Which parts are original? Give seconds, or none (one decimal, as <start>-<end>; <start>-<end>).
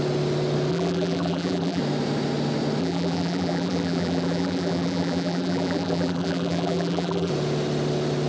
0.0-0.7; 1.8-2.8; 7.3-8.3